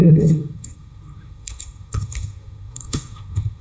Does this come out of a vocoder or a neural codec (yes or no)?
yes